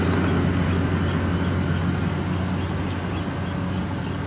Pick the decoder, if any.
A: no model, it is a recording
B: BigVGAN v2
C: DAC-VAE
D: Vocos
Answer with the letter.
A